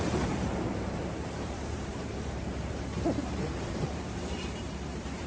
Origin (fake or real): fake